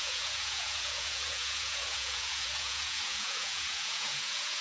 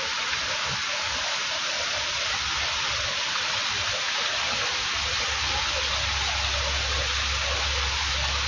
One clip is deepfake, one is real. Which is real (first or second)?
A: second